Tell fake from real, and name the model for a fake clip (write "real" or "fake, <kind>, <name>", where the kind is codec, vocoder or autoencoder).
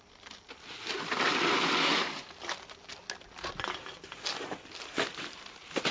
real